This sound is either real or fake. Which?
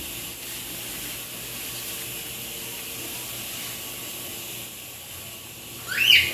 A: real